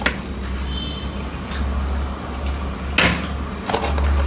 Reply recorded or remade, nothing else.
recorded